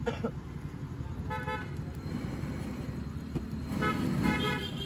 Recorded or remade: recorded